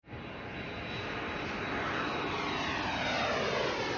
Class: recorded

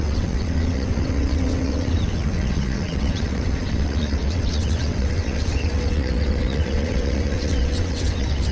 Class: remade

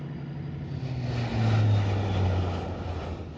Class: recorded